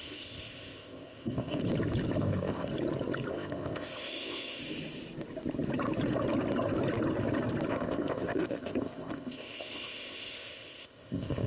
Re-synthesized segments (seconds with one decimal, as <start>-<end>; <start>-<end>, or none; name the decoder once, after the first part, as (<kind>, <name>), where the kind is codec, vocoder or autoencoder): 0.0-1.6 (codec, ZipCodec); 2.2-2.7; 3.3-4.6; 7.7-11.5